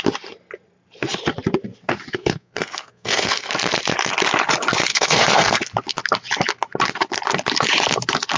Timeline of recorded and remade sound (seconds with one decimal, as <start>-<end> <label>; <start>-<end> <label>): 0.0-2.1 recorded; 2.1-3.5 remade; 3.5-4.9 recorded; 4.9-5.6 remade; 5.6-8.4 recorded